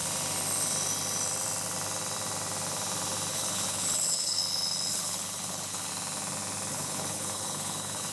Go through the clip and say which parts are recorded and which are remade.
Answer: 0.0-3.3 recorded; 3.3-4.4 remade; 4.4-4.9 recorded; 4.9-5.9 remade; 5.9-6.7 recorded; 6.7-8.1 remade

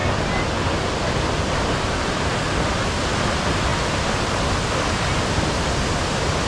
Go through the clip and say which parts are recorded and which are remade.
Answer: 0.0-6.5 recorded

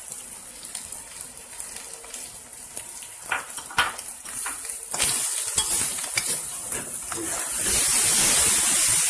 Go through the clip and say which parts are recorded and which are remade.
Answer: 0.0-2.5 recorded; 2.5-3.2 remade; 3.2-9.1 recorded

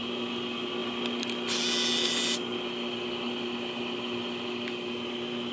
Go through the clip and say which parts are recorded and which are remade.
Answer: 0.0-5.5 recorded

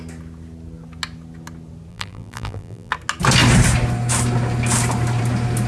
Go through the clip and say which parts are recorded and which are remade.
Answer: 0.0-1.9 recorded; 1.9-2.9 remade; 2.9-5.7 recorded

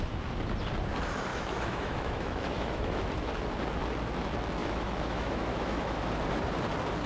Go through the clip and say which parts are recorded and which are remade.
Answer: 0.0-1.3 recorded; 1.3-3.0 remade; 3.0-4.6 recorded; 4.6-6.1 remade; 6.1-7.1 recorded

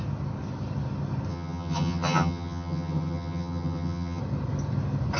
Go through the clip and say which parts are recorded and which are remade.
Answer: 0.0-1.3 recorded; 1.3-4.2 remade; 4.2-5.2 recorded

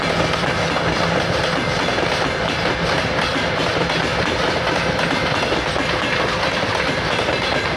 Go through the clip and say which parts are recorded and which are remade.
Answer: 0.0-3.3 recorded; 3.3-5.0 remade; 5.0-7.8 recorded